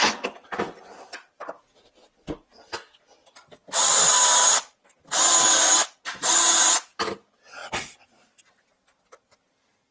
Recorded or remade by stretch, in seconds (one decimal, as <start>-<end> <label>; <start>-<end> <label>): 0.0-9.9 recorded